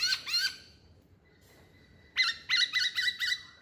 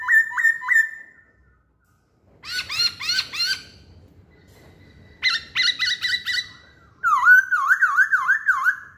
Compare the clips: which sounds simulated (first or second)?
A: first